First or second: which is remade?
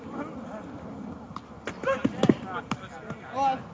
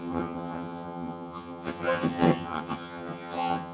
second